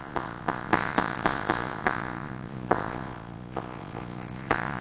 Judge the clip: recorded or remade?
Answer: remade